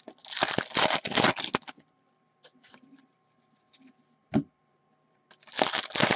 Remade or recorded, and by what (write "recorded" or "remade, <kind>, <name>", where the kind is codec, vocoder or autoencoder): remade, vocoder, BigVGAN v2